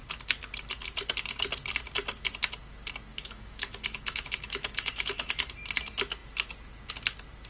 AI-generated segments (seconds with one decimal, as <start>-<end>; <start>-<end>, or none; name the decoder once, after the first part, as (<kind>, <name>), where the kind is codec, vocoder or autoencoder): 3.1-5.5 (autoencoder, DAC-VAE)